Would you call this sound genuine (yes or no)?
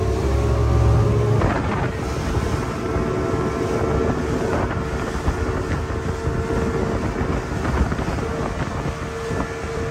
yes